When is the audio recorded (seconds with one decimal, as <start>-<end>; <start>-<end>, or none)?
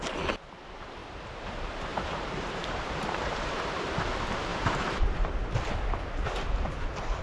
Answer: 0.0-1.0; 1.5-1.9; 4.1-4.5; 5.3-7.2